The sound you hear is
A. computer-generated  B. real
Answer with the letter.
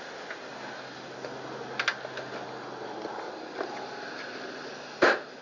B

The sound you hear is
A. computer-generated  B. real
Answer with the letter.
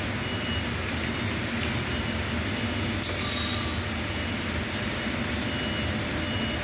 B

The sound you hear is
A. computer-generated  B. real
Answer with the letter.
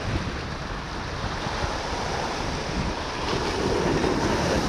B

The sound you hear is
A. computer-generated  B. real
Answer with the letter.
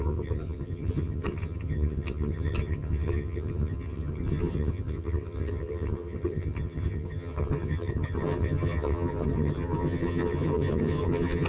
A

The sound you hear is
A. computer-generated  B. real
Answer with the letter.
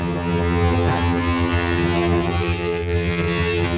A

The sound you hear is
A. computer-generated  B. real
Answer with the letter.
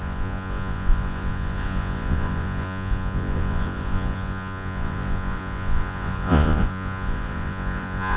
A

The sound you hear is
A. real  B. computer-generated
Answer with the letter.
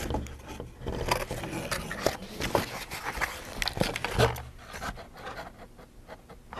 A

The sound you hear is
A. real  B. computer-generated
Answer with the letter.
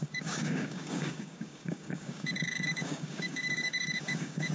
B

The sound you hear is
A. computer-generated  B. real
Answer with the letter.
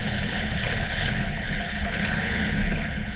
A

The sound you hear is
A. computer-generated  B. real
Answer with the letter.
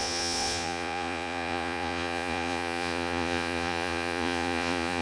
A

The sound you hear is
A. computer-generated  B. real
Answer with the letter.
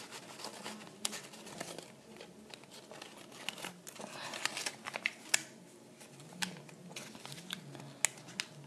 B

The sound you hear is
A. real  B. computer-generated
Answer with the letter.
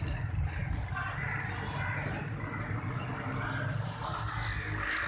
A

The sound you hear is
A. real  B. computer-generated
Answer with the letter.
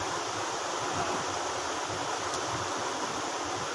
A